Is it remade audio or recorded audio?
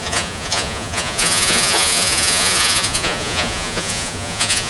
remade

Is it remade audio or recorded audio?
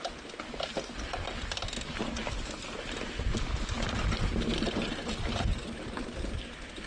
recorded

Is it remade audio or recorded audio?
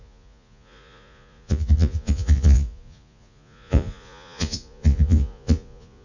remade